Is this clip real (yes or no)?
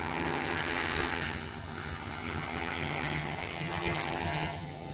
no